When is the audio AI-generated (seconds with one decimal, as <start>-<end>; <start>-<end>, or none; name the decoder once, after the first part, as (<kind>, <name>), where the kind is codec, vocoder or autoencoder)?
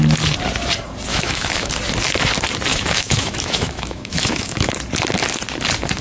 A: 1.1-1.7 (autoencoder, DAC-VAE); 2.7-4.7